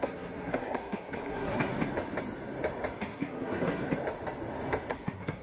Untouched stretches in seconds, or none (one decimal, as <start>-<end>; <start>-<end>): 1.7-3.0; 3.8-4.9